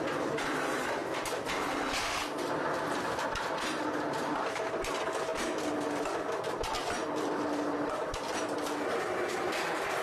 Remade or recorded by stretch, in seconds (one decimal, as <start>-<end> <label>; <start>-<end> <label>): 0.0-10.0 recorded

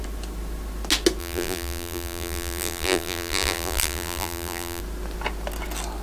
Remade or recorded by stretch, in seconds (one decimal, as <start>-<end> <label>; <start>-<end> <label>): 0.0-1.2 recorded; 1.2-4.8 remade; 4.8-6.0 recorded

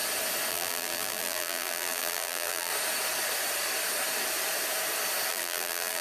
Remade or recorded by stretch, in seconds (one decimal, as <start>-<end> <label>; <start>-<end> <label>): 0.0-0.5 recorded; 0.5-2.7 remade; 2.7-5.3 recorded; 5.3-6.0 remade